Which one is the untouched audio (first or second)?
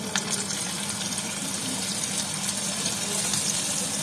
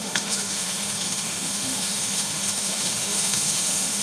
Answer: first